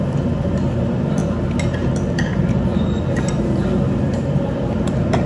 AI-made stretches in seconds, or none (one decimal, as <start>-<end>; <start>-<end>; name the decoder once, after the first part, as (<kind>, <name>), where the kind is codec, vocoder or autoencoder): none